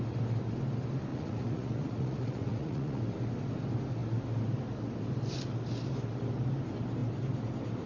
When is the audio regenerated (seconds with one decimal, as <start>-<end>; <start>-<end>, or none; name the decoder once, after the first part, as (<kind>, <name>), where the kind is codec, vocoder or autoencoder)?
1.1-3.0 (vocoder, Vocos)